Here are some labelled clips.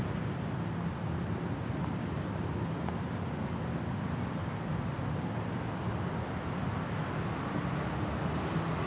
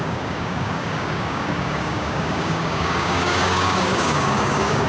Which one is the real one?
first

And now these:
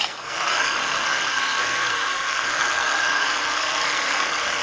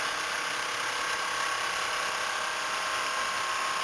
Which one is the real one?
second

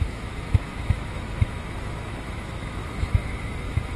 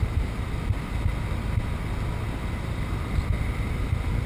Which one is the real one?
second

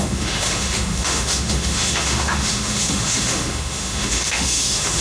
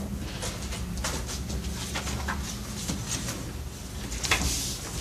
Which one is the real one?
second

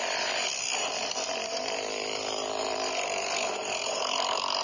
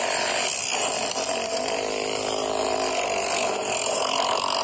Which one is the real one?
second